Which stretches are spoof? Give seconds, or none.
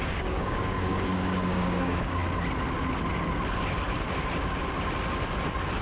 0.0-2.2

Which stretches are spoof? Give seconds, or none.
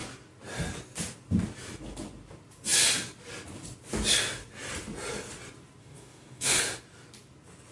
5.8-6.6